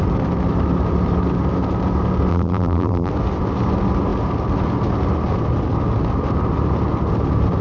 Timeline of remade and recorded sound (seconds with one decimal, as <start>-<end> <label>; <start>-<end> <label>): 0.0-2.3 recorded; 2.3-3.1 remade; 3.1-7.6 recorded